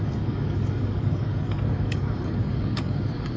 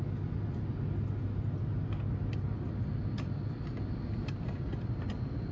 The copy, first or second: first